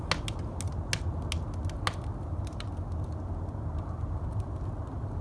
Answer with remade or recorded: recorded